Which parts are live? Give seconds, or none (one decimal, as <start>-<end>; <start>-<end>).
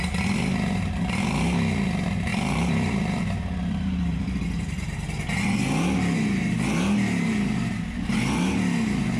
0.0-2.3; 4.4-9.2